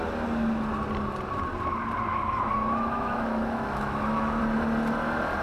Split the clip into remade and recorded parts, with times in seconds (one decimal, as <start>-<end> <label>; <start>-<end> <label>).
0.0-2.1 recorded; 2.1-4.4 remade; 4.4-5.4 recorded